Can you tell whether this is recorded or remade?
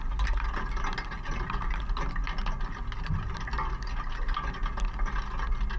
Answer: recorded